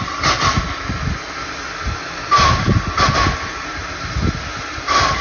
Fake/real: real